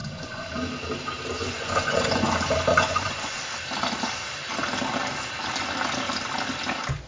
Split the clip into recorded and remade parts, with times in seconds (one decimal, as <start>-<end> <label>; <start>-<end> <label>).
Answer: 0.0-0.5 remade; 0.5-1.4 recorded; 1.4-2.3 remade; 2.3-2.7 recorded; 2.7-3.4 remade; 3.4-7.1 recorded